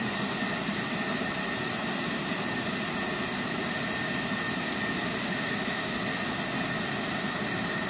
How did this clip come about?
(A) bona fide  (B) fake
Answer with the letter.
A